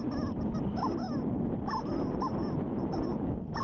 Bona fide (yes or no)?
yes